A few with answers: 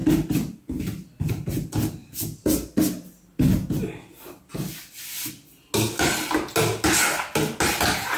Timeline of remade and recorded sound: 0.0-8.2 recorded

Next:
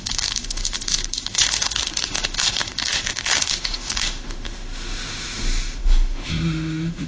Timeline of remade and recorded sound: 0.0-7.1 remade

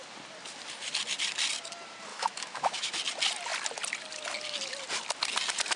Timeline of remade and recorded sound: 0.0-2.1 recorded; 2.1-2.9 remade; 2.9-5.8 recorded

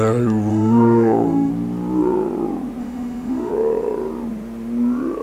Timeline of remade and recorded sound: 0.0-0.5 recorded; 0.5-1.5 remade; 1.5-2.8 recorded; 2.8-3.5 remade; 3.5-5.2 recorded

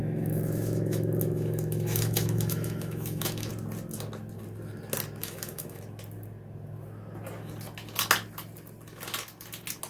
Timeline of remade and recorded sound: 0.0-3.5 remade; 3.5-5.2 recorded; 5.2-5.8 remade; 5.8-9.9 recorded